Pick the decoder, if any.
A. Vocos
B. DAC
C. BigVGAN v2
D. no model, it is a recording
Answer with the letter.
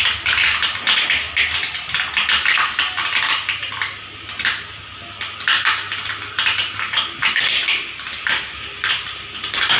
D